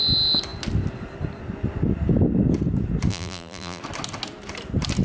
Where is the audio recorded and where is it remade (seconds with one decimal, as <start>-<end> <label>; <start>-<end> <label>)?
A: 0.0-3.1 recorded; 3.1-3.8 remade; 3.8-5.0 recorded